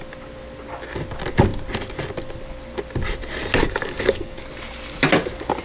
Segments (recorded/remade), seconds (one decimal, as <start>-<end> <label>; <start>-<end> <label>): 0.0-3.6 recorded; 3.6-4.4 remade; 4.4-5.6 recorded